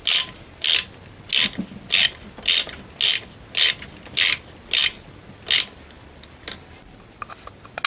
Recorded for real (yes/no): yes